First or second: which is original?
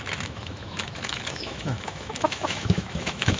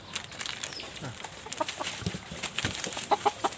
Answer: second